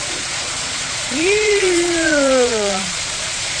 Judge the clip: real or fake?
fake